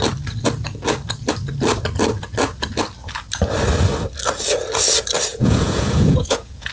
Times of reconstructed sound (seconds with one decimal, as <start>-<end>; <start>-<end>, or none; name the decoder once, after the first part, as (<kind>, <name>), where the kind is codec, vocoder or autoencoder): 5.3-6.7 (vocoder, Vocos)